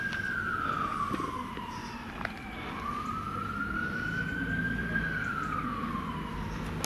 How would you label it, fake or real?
real